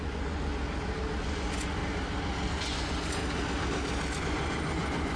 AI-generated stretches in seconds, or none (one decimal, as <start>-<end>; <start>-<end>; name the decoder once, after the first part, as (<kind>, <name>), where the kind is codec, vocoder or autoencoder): 0.0-0.5 (vocoder, Vocos); 1.2-1.8; 2.5-3.2; 4.2-5.2

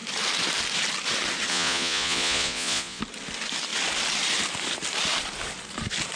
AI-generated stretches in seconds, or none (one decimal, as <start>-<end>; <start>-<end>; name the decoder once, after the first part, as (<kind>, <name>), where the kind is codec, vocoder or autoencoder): 1.5-3.0 (vocoder, Vocos)

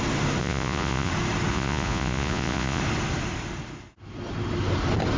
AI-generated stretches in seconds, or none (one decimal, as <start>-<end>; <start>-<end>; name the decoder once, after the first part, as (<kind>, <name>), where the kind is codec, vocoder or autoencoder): 0.4-1.1 (vocoder, Vocos); 1.5-2.8

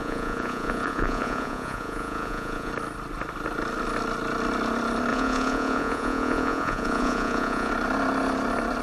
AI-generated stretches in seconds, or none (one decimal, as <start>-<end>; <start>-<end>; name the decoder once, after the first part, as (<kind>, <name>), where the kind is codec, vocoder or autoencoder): 0.0-2.7 (vocoder, Vocos); 5.1-7.7